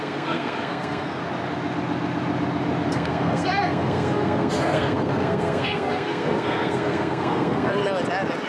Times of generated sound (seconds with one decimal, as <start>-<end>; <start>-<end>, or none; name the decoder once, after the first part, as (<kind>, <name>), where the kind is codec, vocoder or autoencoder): 0.0-1.2 (codec, SNAC); 2.9-7.8